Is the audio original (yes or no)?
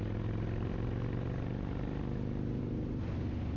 yes